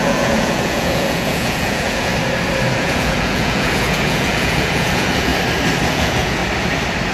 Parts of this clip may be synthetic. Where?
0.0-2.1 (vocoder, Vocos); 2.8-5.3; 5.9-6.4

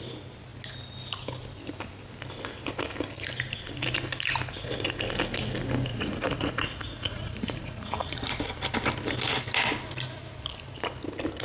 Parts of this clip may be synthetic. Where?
5.9-8.4 (vocoder, Vocos)

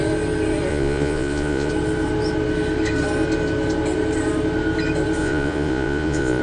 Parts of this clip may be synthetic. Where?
0.7-1.7 (vocoder, Vocos); 5.2-6.4

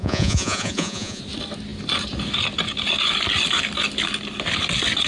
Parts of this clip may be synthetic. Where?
0.0-1.2 (vocoder, Vocos)